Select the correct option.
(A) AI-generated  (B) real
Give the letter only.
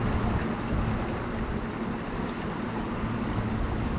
B